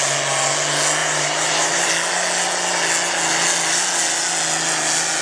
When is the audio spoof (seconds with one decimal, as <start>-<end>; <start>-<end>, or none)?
1.0-1.9